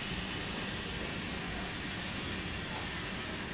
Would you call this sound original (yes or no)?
yes